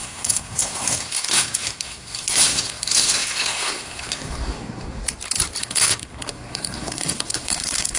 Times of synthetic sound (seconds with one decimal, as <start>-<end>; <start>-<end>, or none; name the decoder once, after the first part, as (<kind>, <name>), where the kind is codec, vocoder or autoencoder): 0.0-5.0 (codec, SNAC); 5.6-8.0